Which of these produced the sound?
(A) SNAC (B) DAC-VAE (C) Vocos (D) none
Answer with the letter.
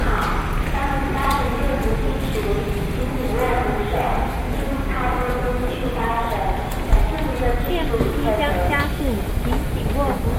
D